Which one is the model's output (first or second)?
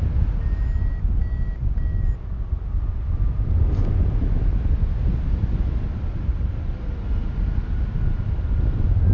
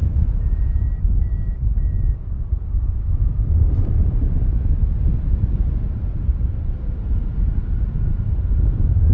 second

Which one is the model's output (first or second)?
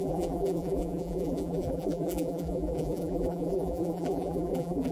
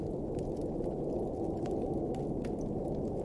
first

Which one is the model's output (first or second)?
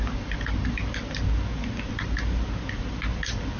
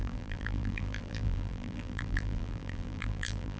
second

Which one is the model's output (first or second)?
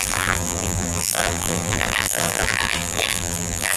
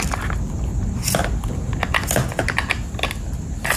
first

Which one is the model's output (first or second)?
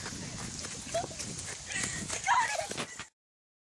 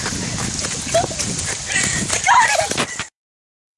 second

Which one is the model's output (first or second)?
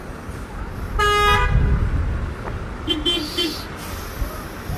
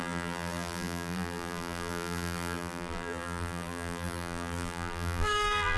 second